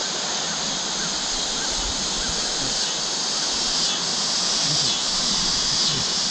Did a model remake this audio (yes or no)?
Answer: no